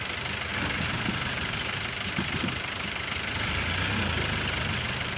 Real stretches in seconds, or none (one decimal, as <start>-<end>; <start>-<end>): 0.0-5.2